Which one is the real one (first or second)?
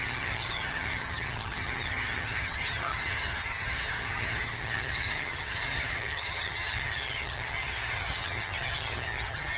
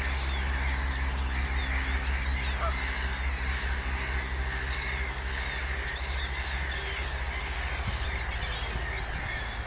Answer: second